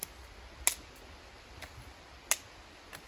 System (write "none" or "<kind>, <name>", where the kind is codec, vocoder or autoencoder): none